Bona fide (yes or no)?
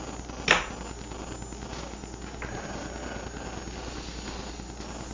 yes